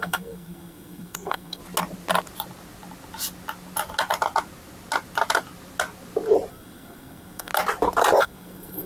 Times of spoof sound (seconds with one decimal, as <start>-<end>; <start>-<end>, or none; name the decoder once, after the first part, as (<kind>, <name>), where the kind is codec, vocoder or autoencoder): 0.0-1.6 (codec, SNAC); 6.5-7.5; 8.2-8.9